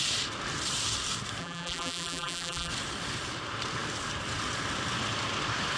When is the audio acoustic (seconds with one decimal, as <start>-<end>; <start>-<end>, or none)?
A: 0.0-1.4; 2.7-5.8